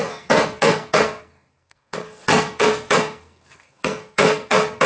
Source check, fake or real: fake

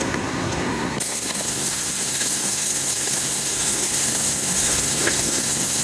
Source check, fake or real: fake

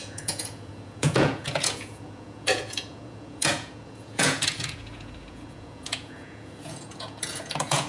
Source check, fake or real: fake